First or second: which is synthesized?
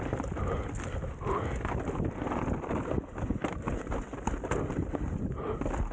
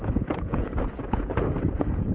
second